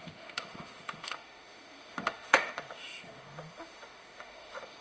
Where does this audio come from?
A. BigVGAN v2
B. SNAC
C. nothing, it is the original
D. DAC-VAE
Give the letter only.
D